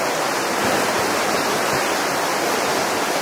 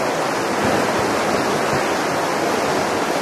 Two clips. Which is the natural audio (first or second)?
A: second